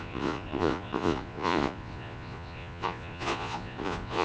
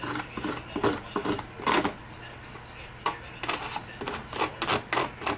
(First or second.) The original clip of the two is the second